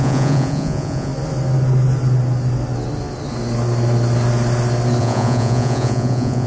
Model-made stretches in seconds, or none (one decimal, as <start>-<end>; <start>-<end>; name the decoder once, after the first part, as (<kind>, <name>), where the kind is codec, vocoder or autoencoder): 0.0-1.1 (vocoder, Vocos); 5.0-6.5